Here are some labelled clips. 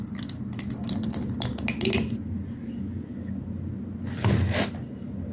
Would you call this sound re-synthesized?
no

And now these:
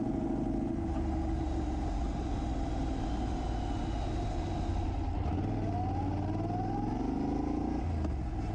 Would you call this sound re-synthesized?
no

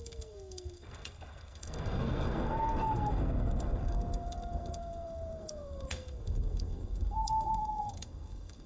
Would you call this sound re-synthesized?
yes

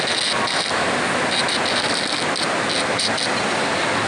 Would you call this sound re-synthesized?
no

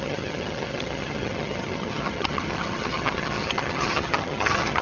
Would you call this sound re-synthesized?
yes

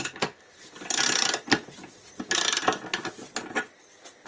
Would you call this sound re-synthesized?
no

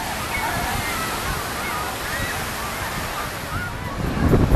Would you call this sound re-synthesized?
no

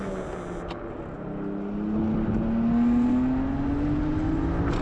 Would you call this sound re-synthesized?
no